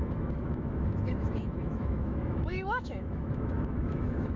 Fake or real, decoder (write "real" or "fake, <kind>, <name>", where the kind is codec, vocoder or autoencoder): fake, autoencoder, DAC-VAE